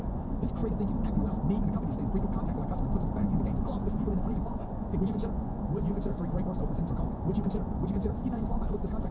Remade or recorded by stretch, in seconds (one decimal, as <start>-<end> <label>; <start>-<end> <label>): 0.0-0.6 remade; 0.6-3.1 recorded; 3.1-9.1 remade

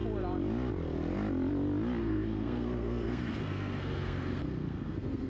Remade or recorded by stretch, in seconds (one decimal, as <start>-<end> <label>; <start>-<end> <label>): 0.0-2.0 recorded; 2.0-5.3 remade

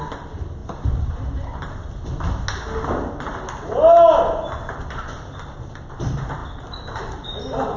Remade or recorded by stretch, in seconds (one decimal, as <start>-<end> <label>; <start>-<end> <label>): 0.0-7.8 recorded

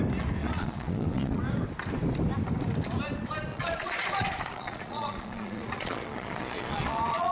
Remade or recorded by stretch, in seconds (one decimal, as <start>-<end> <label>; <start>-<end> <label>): 0.0-0.4 recorded; 0.4-1.4 remade; 1.4-3.5 recorded; 3.5-7.3 remade

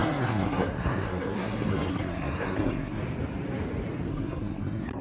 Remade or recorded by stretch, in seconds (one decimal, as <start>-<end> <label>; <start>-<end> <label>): 0.0-3.0 remade; 3.0-4.1 recorded; 4.1-5.0 remade